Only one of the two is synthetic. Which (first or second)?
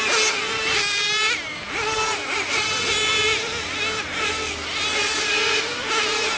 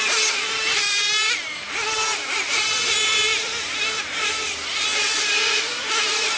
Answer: second